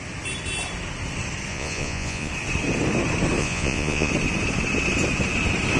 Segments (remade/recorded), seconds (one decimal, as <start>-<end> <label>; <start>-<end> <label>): 0.0-1.5 recorded; 1.5-2.3 remade; 2.3-3.4 recorded; 3.4-4.1 remade; 4.1-5.8 recorded